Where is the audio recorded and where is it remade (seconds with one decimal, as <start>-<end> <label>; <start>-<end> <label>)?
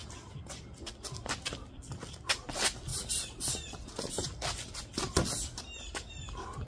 0.0-6.7 recorded